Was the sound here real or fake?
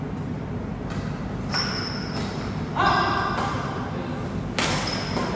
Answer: real